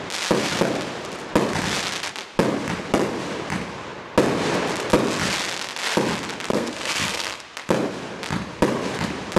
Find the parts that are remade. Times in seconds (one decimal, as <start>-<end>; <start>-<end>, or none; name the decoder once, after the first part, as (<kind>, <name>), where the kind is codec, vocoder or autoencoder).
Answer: 6.5-7.4 (codec, SNAC)